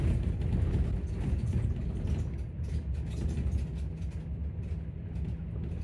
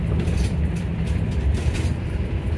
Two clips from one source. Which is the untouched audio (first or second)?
first